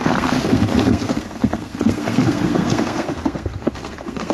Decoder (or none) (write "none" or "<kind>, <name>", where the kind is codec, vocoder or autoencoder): codec, SNAC